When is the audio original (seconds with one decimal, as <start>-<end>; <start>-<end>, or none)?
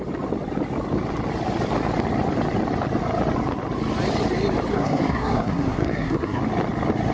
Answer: 0.0-4.7; 6.4-7.1